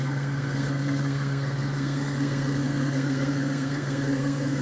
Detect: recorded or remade remade